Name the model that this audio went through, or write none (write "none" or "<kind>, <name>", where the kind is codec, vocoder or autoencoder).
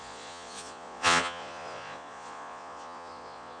vocoder, Vocos